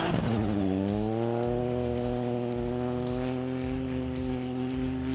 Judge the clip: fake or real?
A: real